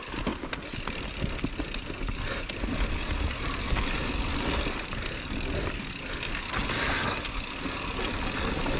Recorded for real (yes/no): yes